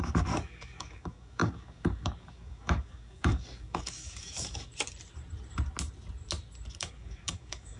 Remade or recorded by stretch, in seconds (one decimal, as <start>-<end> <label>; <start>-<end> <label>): 0.0-4.7 remade; 4.7-6.8 recorded; 6.8-7.8 remade